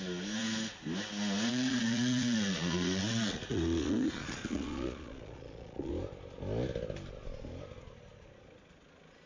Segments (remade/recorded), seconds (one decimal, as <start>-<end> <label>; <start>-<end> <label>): 0.0-1.5 recorded; 1.5-5.9 remade; 5.9-9.3 recorded

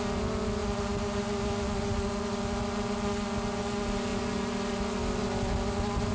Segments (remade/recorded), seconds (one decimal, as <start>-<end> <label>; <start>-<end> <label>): 0.0-6.1 recorded

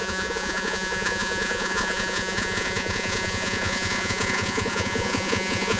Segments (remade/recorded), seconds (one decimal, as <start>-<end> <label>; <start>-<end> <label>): 0.0-5.8 remade

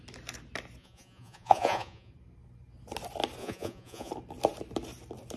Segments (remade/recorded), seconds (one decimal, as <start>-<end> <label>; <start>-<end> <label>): 0.0-0.8 recorded; 0.8-2.1 remade; 2.1-3.4 recorded; 3.4-4.1 remade; 4.1-5.4 recorded

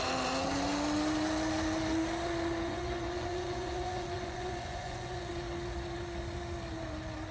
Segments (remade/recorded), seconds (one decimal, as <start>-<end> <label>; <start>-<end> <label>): 0.0-2.6 recorded; 2.6-5.3 remade; 5.3-7.3 recorded

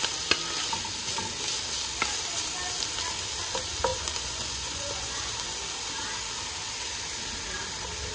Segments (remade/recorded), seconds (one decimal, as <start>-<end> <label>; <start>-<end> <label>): 0.0-3.9 recorded; 3.9-5.3 remade; 5.3-8.1 recorded

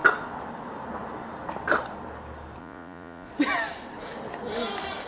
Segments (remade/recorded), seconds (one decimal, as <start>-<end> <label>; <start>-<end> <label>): 0.0-2.6 recorded; 2.6-3.3 remade; 3.3-5.1 recorded

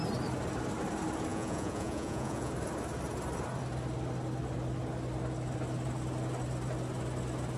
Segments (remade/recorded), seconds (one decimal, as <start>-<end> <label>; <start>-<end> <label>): 0.0-1.3 recorded; 1.3-2.5 remade; 2.5-7.6 recorded